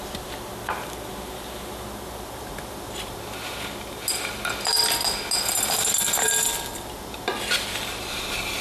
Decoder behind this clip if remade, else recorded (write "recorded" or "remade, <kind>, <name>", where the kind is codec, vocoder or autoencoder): recorded